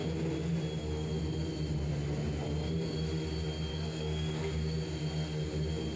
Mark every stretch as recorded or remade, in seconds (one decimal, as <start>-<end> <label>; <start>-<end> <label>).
0.0-3.7 recorded; 3.7-4.5 remade; 4.5-6.0 recorded